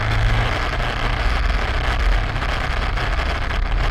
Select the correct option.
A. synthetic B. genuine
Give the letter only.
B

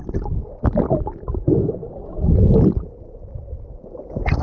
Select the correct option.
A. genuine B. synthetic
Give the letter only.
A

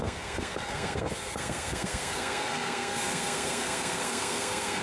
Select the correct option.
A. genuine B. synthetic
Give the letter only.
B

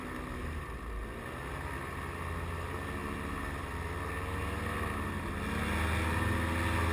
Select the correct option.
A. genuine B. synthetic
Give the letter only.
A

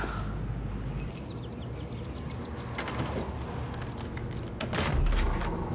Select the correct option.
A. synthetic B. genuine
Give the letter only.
B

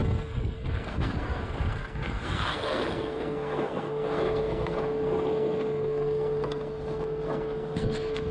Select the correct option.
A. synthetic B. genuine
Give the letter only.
A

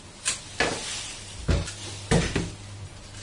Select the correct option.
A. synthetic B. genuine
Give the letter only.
B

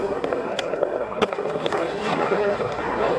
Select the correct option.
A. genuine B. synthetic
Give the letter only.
B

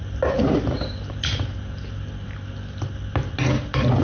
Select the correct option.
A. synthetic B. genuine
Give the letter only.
B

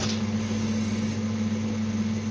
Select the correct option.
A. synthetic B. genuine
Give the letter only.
B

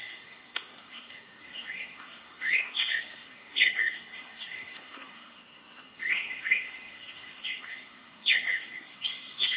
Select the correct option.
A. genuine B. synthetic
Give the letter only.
B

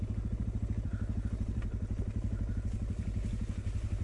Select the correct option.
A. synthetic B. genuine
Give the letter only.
B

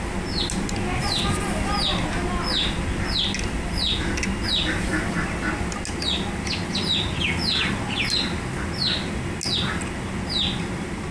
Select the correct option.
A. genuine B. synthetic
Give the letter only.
A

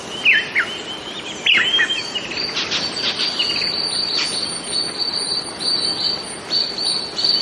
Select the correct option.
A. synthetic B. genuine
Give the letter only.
B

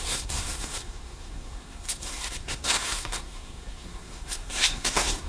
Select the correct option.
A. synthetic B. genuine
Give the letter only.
A